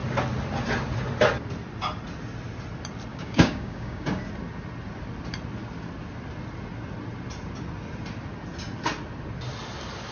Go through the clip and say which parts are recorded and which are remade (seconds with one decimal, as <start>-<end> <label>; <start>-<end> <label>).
0.0-3.1 recorded; 3.1-4.2 remade; 4.2-10.1 recorded